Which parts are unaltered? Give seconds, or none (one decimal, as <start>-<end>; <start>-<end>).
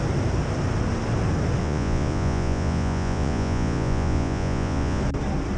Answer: 0.0-1.6; 5.0-5.6